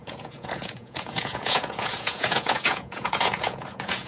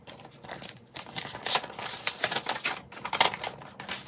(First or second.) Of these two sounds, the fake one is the first